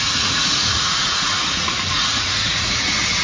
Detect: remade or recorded remade